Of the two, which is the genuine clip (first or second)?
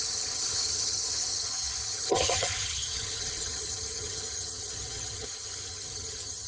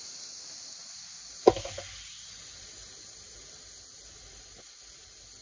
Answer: second